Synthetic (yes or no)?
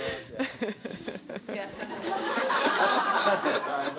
yes